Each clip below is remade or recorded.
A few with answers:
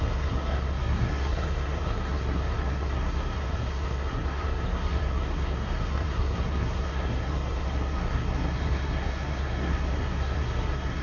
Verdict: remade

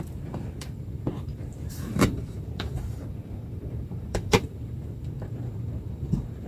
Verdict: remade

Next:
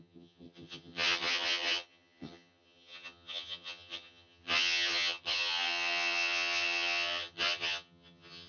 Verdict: remade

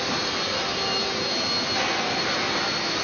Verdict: recorded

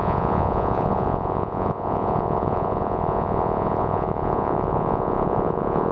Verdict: remade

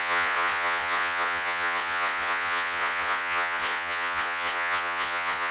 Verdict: remade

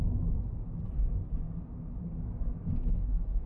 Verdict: recorded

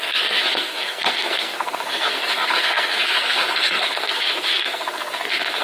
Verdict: remade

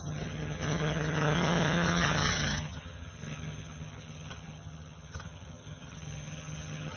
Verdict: remade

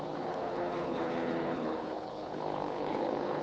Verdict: remade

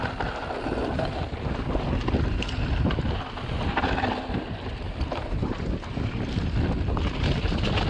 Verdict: recorded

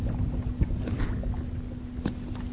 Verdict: recorded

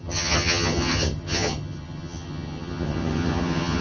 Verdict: remade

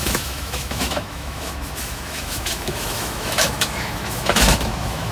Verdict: remade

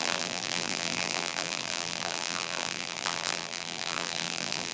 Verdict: remade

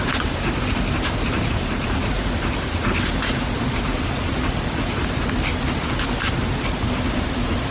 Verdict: recorded